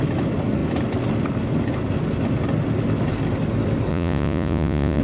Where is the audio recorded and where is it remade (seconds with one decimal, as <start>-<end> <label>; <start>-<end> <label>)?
0.0-3.9 recorded; 3.9-5.0 remade